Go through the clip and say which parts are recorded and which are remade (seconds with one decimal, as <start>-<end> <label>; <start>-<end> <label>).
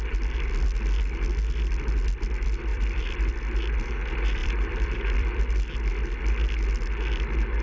0.0-2.7 recorded; 2.7-3.3 remade; 3.3-4.4 recorded; 4.4-5.4 remade; 5.4-7.6 recorded